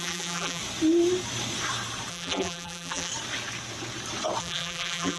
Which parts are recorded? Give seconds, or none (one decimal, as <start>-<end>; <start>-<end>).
0.6-2.1; 3.1-4.4